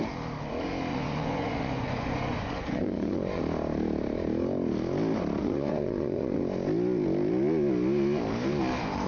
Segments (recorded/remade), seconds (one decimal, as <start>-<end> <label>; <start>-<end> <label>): 0.0-0.9 recorded; 0.9-3.4 remade; 3.4-5.4 recorded; 5.4-6.4 remade; 6.4-9.1 recorded